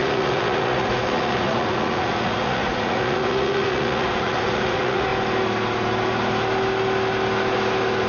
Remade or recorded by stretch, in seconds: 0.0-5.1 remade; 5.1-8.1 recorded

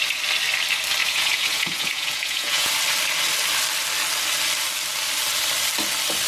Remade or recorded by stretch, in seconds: 0.0-1.0 recorded; 1.0-2.7 remade; 2.7-6.3 recorded

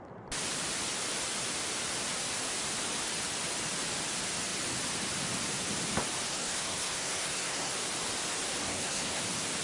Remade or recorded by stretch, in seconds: 0.0-6.3 recorded; 6.3-7.7 remade; 7.7-8.6 recorded; 8.6-9.2 remade; 9.2-9.6 recorded

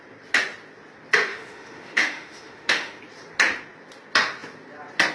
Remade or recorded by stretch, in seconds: 0.0-1.3 recorded; 1.3-3.0 remade; 3.0-5.1 recorded